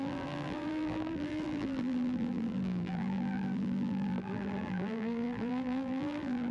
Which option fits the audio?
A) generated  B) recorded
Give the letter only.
A